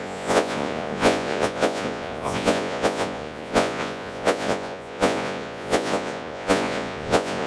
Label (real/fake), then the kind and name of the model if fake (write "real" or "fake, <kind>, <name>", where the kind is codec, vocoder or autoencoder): fake, vocoder, Vocos